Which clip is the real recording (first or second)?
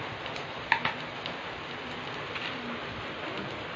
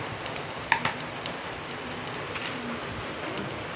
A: first